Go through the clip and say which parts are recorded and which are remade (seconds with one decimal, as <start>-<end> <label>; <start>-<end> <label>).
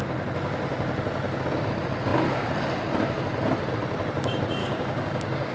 0.0-4.6 recorded; 4.6-5.5 remade